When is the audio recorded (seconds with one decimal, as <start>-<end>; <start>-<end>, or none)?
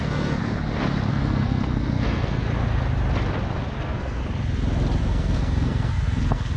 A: 0.4-1.1; 2.4-3.8; 4.2-5.0